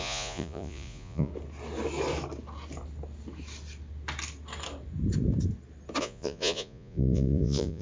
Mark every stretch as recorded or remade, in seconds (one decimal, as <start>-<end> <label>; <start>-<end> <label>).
0.0-1.3 remade; 1.3-6.0 recorded; 6.0-7.8 remade